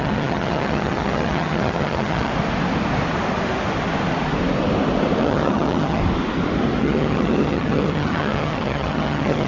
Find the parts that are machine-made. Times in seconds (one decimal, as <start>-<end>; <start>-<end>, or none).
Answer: 0.0-2.3; 5.2-6.0; 6.8-9.5